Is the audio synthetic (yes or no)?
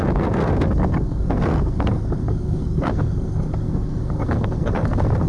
yes